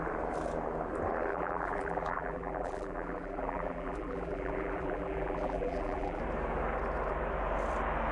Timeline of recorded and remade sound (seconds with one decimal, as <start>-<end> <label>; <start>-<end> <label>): 0.0-1.3 recorded; 1.3-6.2 remade; 6.2-8.1 recorded